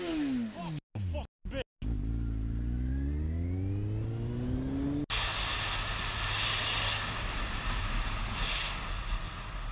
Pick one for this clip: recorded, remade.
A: recorded